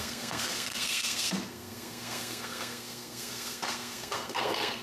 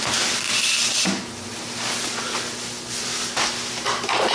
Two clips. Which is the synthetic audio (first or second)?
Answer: first